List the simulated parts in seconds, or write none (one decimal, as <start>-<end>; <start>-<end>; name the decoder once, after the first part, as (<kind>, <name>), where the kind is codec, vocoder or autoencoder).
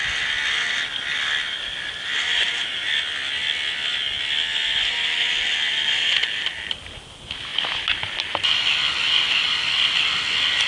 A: 2.3-2.9 (vocoder, BigVGAN v2)